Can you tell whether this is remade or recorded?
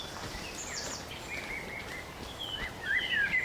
recorded